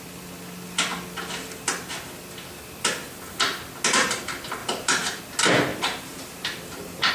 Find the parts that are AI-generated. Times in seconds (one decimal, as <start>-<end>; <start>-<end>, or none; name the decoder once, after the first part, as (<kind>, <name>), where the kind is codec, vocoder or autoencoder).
4.6-5.2 (vocoder, BigVGAN v2); 5.7-7.1